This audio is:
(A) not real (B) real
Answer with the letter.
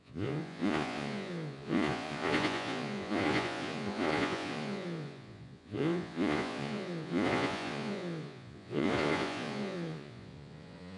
A